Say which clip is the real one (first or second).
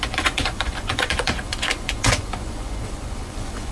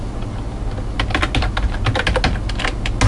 second